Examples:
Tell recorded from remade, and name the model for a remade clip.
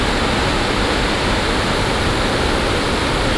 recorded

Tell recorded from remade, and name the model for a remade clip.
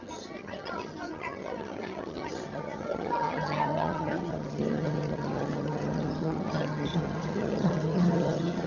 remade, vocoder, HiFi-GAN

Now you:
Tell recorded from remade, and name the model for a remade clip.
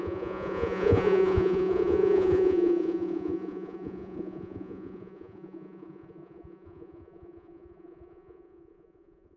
remade, vocoder, Vocos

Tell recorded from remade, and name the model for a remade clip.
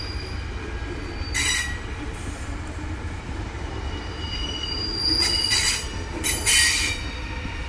recorded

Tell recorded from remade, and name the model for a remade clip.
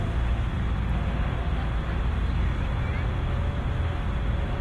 recorded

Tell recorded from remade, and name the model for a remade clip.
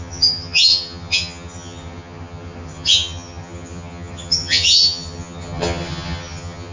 remade, vocoder, HiFi-GAN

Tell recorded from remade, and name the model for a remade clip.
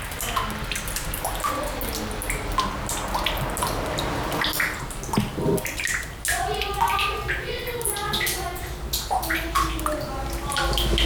recorded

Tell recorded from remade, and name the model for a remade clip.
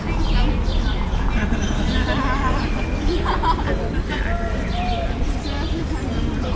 recorded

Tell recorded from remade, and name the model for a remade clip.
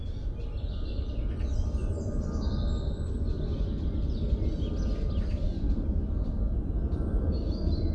remade, vocoder, BigVGAN v2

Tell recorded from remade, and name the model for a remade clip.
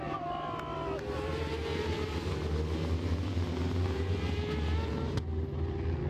recorded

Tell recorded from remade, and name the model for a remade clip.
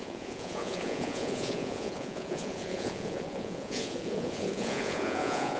remade, vocoder, Vocos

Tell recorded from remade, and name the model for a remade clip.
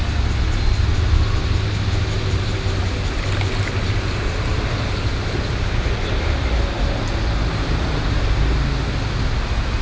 recorded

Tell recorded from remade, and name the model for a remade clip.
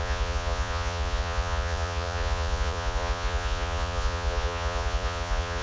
remade, vocoder, Vocos